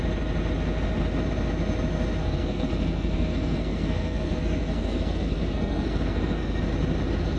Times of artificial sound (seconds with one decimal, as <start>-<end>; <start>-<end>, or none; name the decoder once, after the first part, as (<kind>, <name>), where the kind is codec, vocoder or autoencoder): 2.2-6.6 (codec, SNAC)